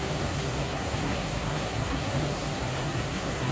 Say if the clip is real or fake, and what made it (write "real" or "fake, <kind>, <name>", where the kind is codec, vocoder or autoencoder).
fake, codec, SNAC